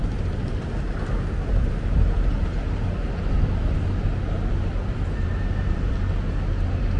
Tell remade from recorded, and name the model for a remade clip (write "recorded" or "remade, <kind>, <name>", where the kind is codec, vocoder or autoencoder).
recorded